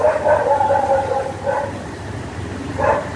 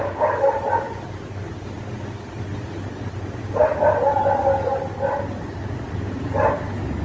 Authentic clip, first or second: second